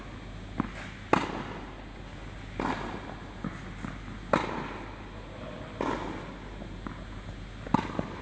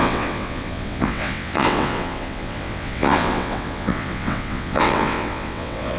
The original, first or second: first